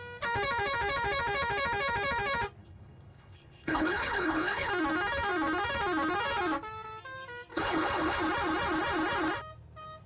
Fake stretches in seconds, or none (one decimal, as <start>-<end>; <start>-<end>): 2.6-4.7; 7.5-8.2